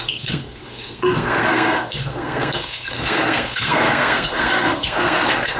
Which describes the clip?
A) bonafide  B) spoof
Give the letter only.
B